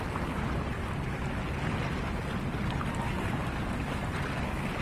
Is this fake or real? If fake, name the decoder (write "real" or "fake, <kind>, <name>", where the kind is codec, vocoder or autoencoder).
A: real